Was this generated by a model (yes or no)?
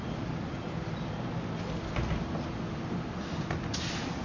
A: no